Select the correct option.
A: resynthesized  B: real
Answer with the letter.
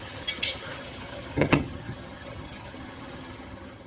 A